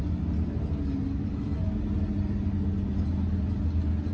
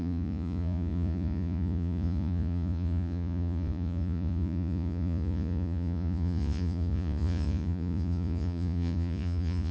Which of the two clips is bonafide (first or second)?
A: first